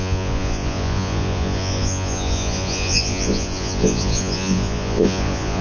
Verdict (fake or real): fake